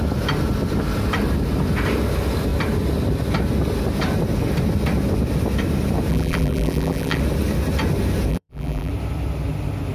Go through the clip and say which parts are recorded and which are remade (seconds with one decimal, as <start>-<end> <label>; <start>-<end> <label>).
0.0-6.1 recorded; 6.1-7.2 remade; 7.2-8.3 recorded; 8.3-8.9 remade; 8.9-9.9 recorded